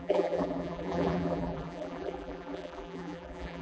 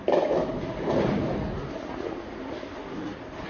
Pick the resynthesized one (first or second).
first